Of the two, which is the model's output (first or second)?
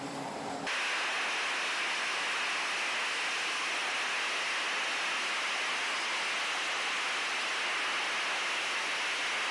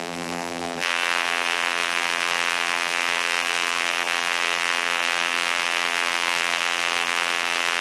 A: second